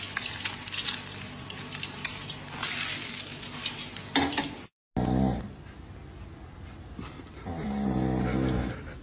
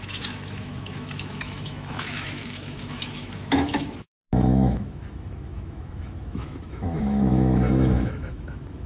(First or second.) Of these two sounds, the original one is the first